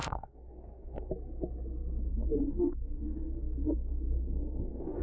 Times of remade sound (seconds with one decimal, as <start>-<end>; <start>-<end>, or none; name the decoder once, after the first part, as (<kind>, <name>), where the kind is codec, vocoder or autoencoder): 0.0-1.1 (codec, SNAC); 2.1-5.0